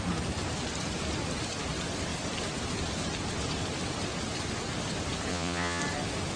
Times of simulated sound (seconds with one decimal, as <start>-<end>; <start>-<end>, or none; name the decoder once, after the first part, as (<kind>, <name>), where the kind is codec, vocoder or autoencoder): 5.3-5.8 (vocoder, Vocos)